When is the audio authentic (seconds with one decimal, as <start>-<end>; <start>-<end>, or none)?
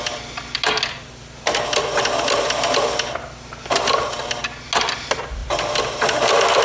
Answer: 0.0-5.4